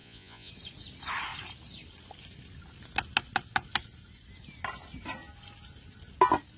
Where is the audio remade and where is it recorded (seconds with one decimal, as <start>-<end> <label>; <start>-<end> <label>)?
0.0-0.5 remade; 0.5-6.6 recorded